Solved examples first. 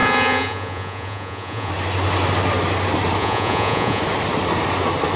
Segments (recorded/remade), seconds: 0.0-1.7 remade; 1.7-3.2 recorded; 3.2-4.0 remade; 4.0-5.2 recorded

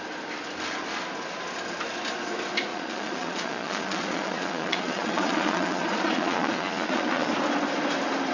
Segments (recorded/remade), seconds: 0.0-2.7 recorded; 2.7-7.3 remade; 7.3-8.3 recorded

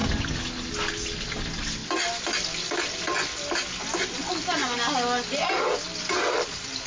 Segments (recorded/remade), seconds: 0.0-6.9 recorded